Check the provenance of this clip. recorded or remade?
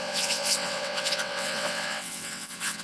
remade